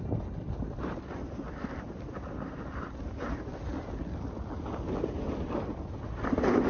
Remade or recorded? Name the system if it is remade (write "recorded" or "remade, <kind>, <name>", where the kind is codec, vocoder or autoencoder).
recorded